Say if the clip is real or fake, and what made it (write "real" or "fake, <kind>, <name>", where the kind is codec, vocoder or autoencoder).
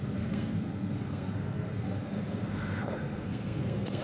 fake, codec, SNAC